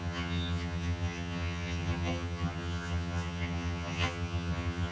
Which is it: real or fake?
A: fake